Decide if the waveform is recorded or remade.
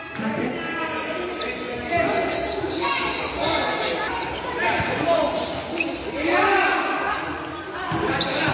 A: recorded